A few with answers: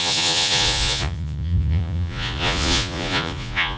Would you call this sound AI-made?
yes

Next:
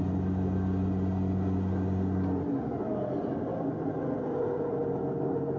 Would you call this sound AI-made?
no